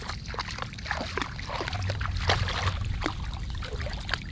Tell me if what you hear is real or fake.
real